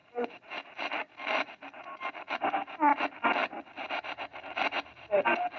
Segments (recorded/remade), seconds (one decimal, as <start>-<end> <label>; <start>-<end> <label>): 0.0-0.5 remade; 0.5-1.0 recorded; 1.0-2.5 remade; 2.5-5.6 recorded